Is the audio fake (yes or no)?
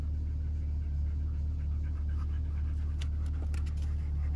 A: no